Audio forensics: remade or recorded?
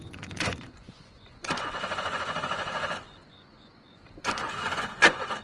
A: remade